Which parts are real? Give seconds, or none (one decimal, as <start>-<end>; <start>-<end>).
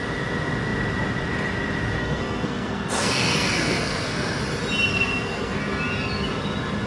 0.0-2.0; 4.4-4.9; 5.6-6.9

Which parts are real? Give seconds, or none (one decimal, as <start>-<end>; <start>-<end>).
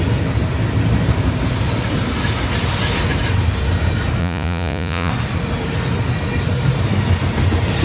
0.0-4.2; 5.1-7.8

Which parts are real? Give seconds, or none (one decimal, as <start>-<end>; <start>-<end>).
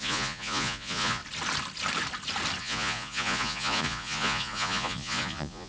1.2-2.6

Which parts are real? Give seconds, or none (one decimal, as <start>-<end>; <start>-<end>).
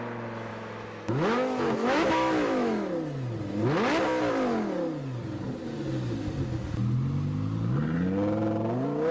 0.0-0.5; 2.9-9.1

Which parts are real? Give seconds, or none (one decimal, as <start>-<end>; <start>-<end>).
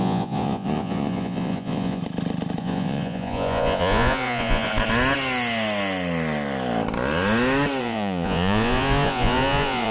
2.0-2.6; 4.7-7.8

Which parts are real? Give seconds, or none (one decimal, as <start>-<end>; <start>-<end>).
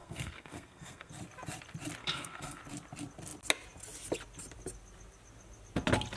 1.1-2.0; 2.6-6.2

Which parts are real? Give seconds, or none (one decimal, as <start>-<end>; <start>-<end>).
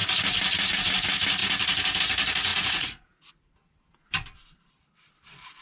0.0-2.5; 3.3-5.6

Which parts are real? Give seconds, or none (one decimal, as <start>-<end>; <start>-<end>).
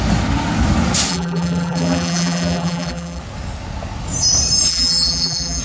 0.0-1.1; 3.2-4.7